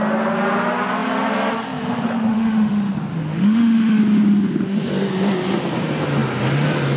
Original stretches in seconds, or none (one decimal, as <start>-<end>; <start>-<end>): 0.0-2.3; 2.9-3.3; 4.0-7.0